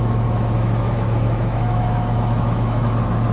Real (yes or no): no